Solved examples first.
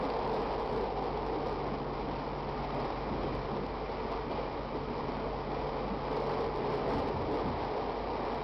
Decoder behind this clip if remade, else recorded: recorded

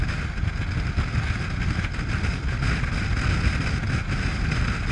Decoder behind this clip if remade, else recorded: recorded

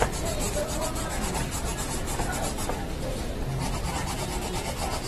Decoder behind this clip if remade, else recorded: recorded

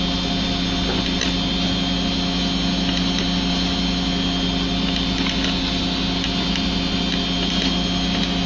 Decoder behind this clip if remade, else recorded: recorded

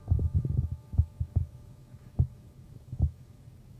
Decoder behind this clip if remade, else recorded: remade, codec, DAC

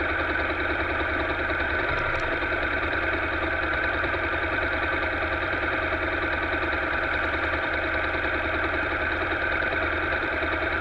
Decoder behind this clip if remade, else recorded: remade, vocoder, BigVGAN v2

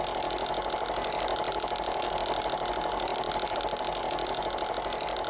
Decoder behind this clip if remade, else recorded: recorded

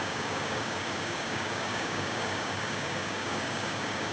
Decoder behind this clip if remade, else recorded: remade, codec, DAC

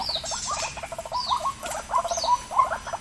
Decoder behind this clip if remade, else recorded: recorded